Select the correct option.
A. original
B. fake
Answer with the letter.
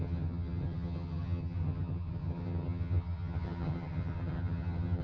B